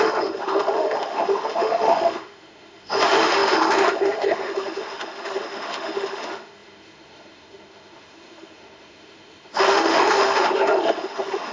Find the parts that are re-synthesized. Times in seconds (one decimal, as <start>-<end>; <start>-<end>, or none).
0.0-11.5